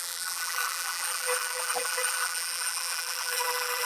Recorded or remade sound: remade